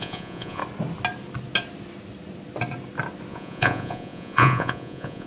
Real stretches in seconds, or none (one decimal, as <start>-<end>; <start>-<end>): 0.6-3.3